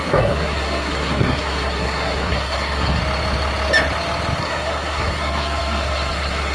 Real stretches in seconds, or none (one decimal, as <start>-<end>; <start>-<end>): 3.0-4.4